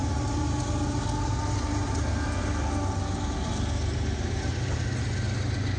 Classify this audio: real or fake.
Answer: real